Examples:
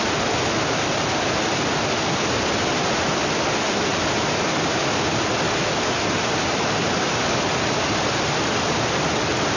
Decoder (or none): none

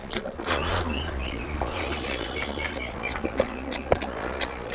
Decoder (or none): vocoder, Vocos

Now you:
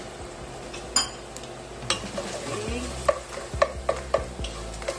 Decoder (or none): none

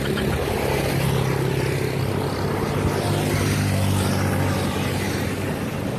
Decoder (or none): none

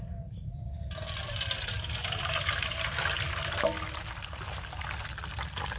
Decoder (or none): none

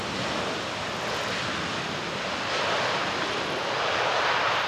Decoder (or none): none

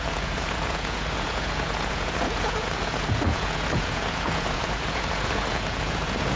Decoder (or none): vocoder, Vocos